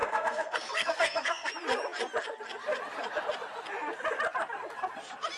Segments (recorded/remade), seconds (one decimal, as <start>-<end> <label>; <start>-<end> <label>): 0.0-1.5 remade; 1.5-5.4 recorded